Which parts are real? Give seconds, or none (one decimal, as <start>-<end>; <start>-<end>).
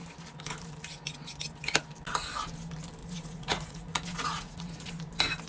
0.0-3.0; 4.9-5.5